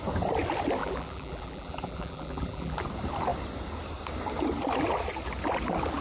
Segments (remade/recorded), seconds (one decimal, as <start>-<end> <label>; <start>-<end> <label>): 0.0-0.8 recorded; 0.8-2.8 remade; 2.8-6.0 recorded